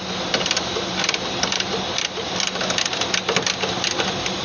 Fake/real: real